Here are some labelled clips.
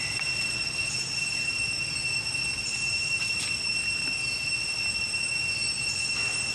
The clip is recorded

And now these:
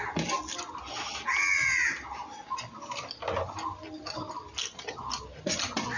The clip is recorded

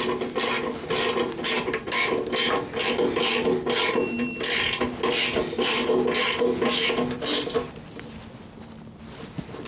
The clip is recorded